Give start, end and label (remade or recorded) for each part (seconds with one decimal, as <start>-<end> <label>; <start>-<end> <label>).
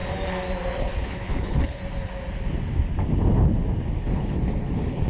0.0-0.8 recorded; 0.8-1.8 remade; 1.8-3.9 recorded; 3.9-5.1 remade